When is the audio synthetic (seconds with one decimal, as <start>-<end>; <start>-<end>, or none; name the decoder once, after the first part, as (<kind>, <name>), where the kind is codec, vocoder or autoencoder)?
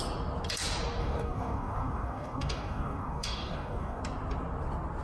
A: 1.0-4.0 (codec, DAC)